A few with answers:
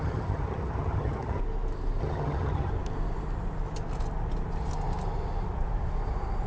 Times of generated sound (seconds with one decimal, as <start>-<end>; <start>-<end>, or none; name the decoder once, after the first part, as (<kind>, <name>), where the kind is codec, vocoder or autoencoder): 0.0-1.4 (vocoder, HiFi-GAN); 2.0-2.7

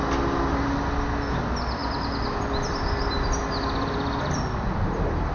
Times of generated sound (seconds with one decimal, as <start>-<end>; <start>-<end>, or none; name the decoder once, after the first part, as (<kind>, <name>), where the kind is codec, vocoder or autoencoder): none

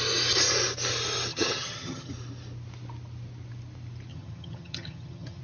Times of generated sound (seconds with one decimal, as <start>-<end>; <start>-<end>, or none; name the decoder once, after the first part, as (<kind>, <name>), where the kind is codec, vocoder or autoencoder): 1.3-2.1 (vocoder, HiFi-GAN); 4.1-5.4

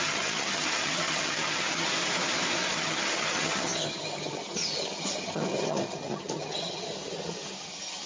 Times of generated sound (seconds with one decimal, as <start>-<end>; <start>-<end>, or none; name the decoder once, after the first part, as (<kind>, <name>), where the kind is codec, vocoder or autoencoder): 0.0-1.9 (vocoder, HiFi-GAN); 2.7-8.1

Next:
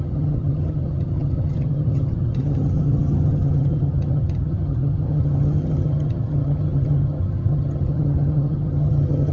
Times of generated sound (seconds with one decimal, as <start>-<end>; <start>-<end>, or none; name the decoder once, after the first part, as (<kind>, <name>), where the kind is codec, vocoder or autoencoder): 0.0-9.3 (vocoder, HiFi-GAN)

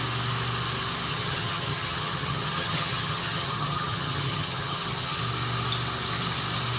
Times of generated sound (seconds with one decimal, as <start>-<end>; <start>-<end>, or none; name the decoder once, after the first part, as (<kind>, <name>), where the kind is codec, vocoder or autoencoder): 1.1-5.2 (vocoder, HiFi-GAN)

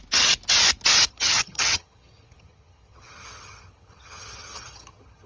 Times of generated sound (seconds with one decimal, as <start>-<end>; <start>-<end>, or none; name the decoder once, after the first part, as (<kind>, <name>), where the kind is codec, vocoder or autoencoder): 1.1-5.3 (vocoder, HiFi-GAN)

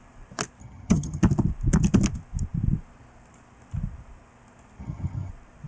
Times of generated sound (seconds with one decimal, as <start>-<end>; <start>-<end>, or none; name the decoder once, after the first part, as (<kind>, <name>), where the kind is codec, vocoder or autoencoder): 0.6-1.2 (vocoder, HiFi-GAN); 4.8-5.3